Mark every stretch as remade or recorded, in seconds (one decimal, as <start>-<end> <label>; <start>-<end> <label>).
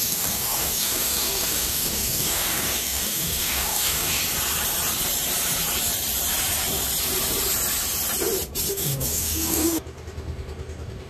0.0-4.2 remade; 4.2-8.7 recorded; 8.7-11.1 remade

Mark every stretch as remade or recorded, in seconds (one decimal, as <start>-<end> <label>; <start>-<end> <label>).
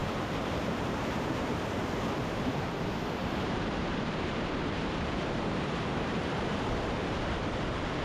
0.0-1.6 remade; 1.6-3.2 recorded; 3.2-6.5 remade; 6.5-8.0 recorded